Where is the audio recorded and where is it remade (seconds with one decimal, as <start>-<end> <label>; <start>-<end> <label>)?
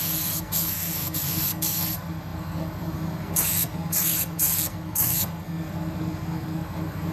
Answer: 0.0-7.1 remade